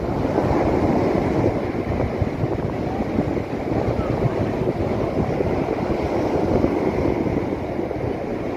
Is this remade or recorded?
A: recorded